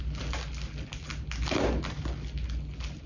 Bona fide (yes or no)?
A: yes